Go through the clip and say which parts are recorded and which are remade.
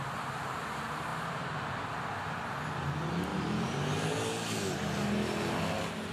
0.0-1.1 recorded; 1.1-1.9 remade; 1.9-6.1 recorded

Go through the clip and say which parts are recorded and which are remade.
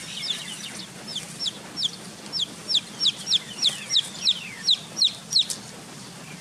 0.0-6.4 recorded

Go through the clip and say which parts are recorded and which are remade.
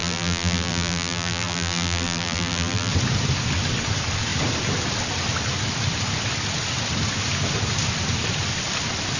0.0-2.9 remade; 2.9-9.2 recorded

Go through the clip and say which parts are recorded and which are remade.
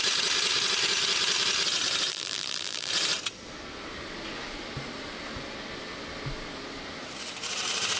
0.0-2.1 recorded; 2.1-2.9 remade; 2.9-8.0 recorded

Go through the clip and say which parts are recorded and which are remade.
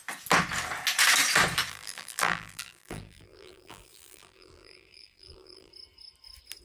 0.0-1.7 recorded; 1.7-5.7 remade; 5.7-6.6 recorded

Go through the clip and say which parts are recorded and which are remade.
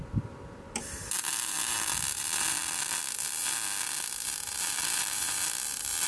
0.0-2.6 remade; 2.6-4.8 recorded; 4.8-6.1 remade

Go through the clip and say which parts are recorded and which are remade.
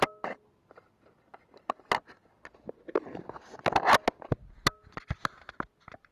0.0-6.1 recorded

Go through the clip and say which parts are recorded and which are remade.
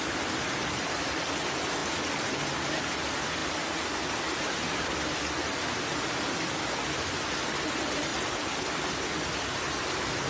0.0-8.1 recorded; 8.1-8.7 remade; 8.7-10.3 recorded